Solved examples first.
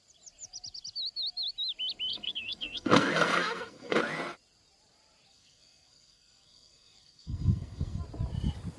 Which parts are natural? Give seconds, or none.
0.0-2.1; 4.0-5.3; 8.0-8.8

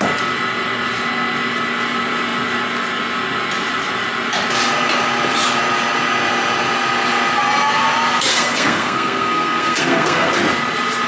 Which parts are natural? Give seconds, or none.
0.0-8.3; 10.3-11.1

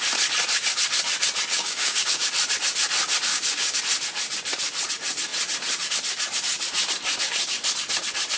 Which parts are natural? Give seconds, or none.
0.0-1.5; 2.3-3.3; 3.8-8.4

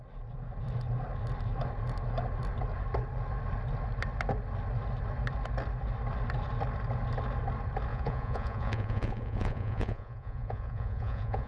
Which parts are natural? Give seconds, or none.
0.0-7.9

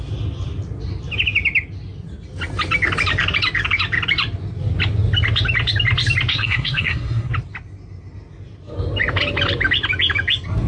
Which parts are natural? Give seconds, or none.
0.0-6.3; 7.3-10.7

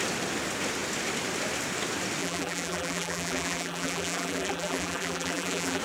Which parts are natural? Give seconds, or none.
0.0-2.2

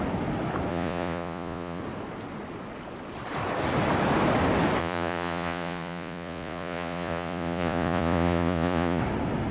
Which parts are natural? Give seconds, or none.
0.0-0.7; 1.8-4.8; 9.0-9.5

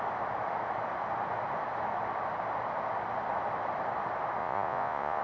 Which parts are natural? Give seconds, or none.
0.0-4.4